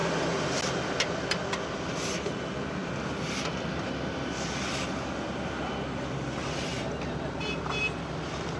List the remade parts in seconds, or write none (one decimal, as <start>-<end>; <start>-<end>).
none